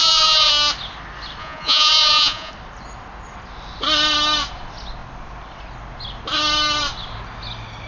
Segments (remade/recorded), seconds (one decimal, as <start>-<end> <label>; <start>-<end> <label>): 0.0-0.5 remade; 0.5-1.4 recorded; 1.4-2.5 remade; 2.5-7.9 recorded